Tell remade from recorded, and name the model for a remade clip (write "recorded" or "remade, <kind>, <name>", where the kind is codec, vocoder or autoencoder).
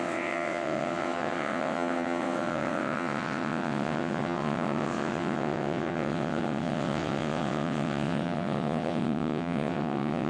remade, vocoder, WaveNeXt